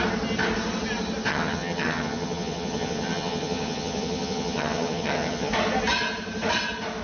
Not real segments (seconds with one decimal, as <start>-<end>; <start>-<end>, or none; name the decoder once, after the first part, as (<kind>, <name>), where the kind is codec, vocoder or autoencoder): 1.3-5.5 (vocoder, HiFi-GAN)